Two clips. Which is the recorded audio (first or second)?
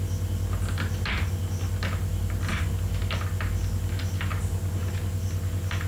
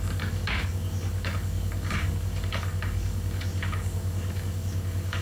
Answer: first